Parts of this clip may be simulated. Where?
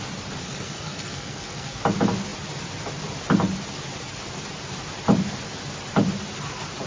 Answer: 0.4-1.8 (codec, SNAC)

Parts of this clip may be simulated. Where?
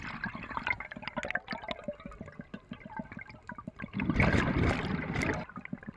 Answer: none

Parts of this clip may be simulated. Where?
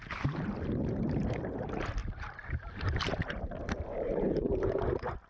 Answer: 0.0-1.4 (vocoder, BigVGAN v2); 2.0-4.8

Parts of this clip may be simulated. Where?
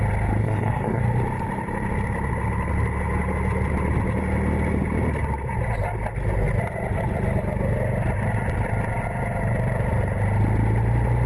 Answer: 0.4-1.0 (codec, SNAC)